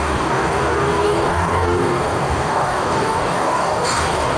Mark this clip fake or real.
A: fake